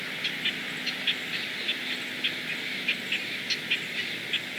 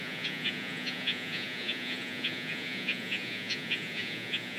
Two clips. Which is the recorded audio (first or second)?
first